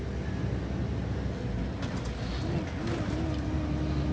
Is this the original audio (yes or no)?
yes